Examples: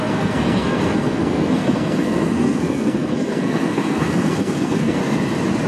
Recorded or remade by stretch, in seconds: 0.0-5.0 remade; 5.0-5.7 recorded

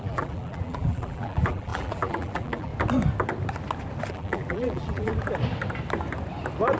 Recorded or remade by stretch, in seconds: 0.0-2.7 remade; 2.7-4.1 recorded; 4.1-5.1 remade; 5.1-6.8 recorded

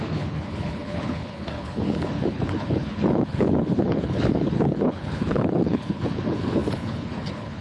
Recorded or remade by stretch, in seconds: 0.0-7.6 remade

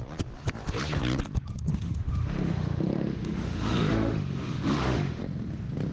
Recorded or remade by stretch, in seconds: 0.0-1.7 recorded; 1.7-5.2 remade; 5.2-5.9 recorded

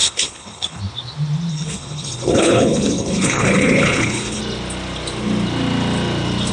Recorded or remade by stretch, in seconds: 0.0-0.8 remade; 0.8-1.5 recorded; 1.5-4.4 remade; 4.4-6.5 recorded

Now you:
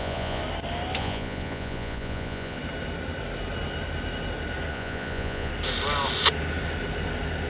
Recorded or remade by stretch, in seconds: 0.0-0.4 remade; 0.4-1.0 recorded; 1.0-2.6 remade; 2.6-4.7 recorded; 4.7-5.5 remade; 5.5-7.5 recorded